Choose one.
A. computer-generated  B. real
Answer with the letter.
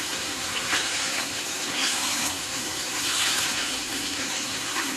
A